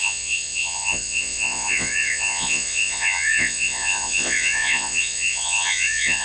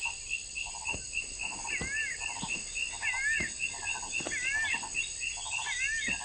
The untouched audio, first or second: second